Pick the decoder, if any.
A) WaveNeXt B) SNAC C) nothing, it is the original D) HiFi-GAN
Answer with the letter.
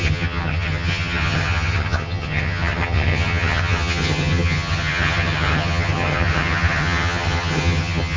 D